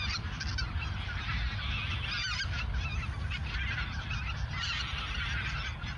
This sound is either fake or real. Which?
real